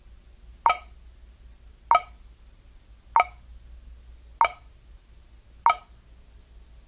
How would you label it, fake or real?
real